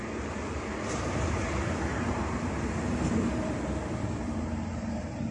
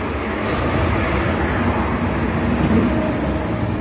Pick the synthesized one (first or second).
first